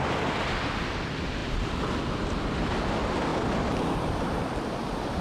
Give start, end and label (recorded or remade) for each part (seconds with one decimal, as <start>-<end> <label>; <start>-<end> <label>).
0.0-5.2 recorded